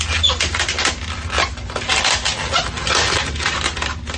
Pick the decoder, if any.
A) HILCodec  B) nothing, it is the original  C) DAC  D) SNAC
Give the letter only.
B